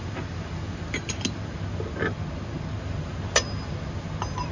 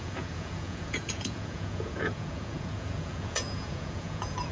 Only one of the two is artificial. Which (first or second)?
second